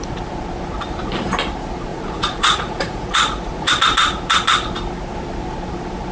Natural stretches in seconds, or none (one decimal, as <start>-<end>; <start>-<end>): 0.0-1.9; 3.7-6.1